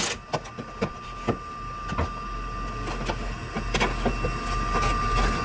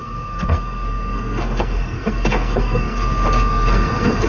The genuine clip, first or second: first